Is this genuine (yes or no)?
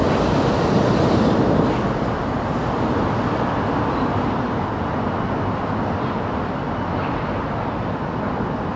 yes